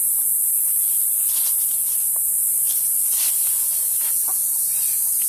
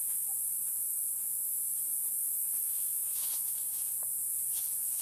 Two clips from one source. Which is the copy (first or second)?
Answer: second